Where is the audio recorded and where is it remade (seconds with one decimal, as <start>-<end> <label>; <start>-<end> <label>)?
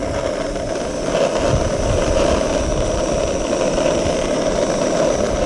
0.0-5.5 recorded